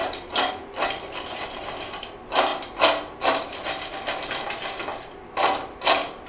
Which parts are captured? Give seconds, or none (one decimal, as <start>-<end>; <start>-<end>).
0.0-6.3